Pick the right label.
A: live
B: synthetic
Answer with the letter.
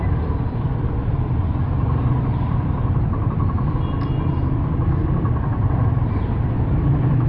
B